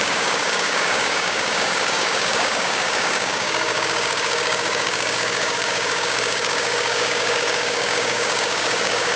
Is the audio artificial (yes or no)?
yes